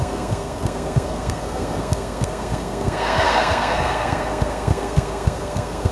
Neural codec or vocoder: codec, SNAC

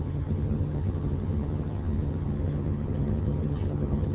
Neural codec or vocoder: vocoder, HiFi-GAN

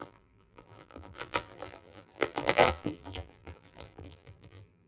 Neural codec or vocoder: vocoder, BigVGAN v2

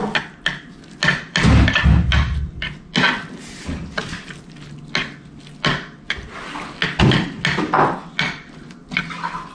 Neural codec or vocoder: none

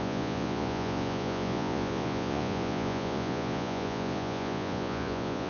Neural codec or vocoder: vocoder, Vocos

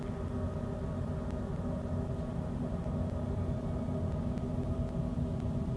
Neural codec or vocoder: none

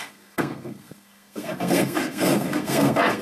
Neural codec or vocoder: codec, SNAC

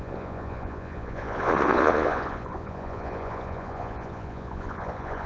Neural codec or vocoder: vocoder, Vocos